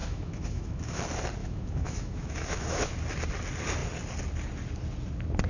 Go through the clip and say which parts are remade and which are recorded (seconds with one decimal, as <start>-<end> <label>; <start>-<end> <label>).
0.0-1.0 remade; 1.0-1.4 recorded; 1.4-2.9 remade; 2.9-5.5 recorded